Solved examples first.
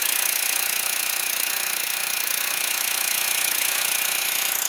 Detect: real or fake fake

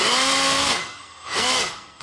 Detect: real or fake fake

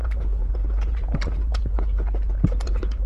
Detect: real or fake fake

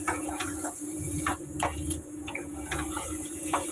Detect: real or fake fake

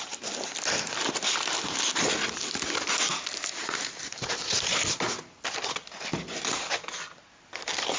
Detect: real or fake real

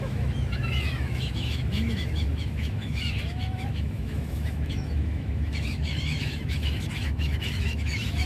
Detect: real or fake fake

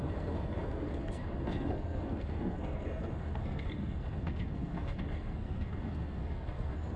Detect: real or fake fake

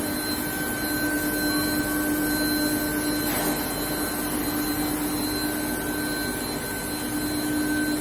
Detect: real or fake real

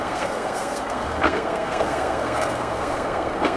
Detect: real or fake fake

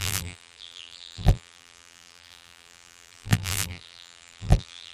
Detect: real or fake fake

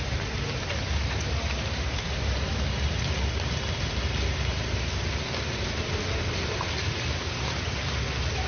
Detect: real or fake real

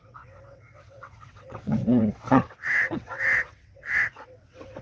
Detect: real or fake fake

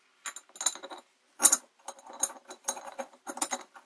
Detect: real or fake real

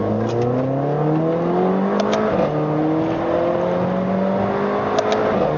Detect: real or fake real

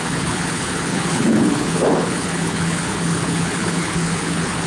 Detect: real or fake fake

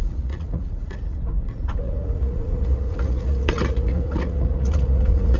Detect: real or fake fake